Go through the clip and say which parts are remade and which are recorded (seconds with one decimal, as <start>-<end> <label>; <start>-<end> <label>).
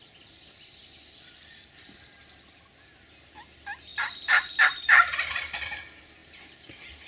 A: 0.0-7.1 recorded